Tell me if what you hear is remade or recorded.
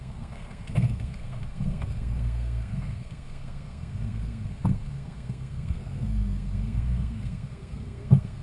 remade